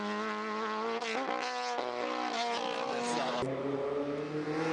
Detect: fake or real real